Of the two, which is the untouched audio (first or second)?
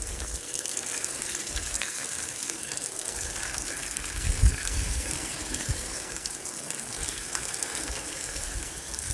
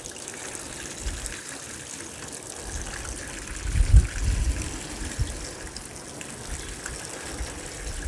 second